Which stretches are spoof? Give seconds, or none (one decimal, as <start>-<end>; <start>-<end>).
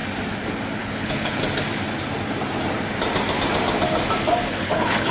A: 0.8-1.4; 4.5-5.1